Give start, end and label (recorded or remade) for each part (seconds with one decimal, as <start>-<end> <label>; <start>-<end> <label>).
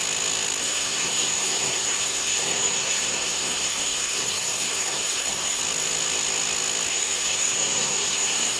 0.0-0.6 recorded; 0.6-5.6 remade; 5.6-6.9 recorded; 6.9-8.6 remade